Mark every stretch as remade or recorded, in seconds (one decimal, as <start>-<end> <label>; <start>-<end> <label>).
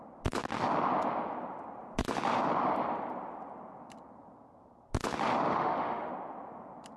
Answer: 0.0-5.5 recorded; 5.5-6.1 remade; 6.1-7.0 recorded